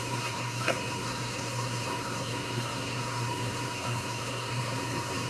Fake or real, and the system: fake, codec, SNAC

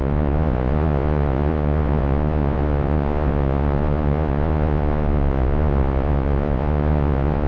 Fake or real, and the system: fake, vocoder, Vocos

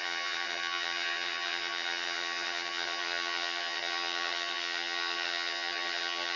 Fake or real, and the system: fake, vocoder, HiFi-GAN